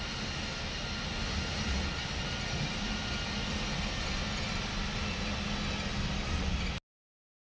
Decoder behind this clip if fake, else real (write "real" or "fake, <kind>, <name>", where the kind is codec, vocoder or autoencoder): real